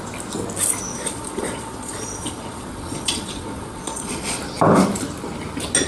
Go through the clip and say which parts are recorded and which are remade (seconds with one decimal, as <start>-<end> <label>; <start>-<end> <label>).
0.0-0.9 recorded; 0.9-4.4 remade; 4.4-5.9 recorded